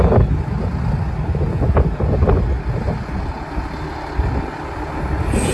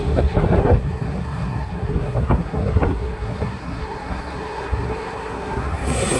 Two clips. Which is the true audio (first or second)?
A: first